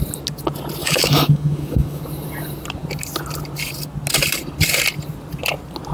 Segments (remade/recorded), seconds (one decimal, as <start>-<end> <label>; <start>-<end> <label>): 0.0-0.8 recorded; 0.8-2.0 remade; 2.0-5.9 recorded